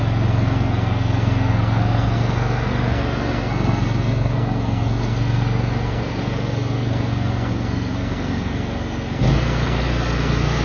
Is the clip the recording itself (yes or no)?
no